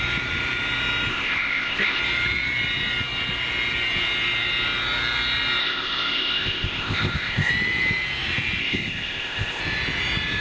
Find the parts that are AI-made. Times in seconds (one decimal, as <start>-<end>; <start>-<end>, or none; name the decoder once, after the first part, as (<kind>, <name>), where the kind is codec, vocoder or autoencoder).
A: 1.1-2.0 (codec, ZipCodec); 5.6-7.5; 8.6-9.6